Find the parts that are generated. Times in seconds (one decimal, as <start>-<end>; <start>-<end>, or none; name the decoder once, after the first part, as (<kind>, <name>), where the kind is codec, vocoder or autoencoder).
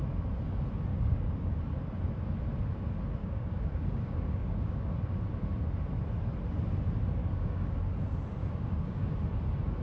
0.9-1.6 (codec, DAC); 3.2-4.9; 7.2-7.8; 8.4-9.1